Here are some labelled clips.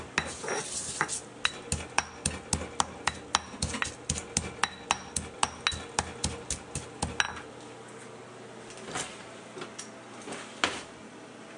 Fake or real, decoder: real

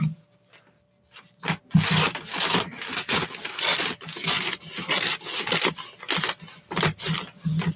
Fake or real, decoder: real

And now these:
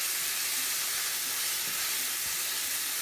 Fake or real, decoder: real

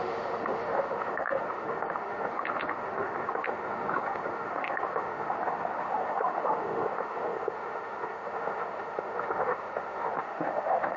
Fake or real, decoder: fake, autoencoder, DAC-VAE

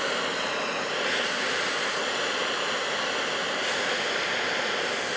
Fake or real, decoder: real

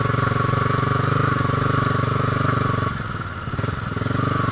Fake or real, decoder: real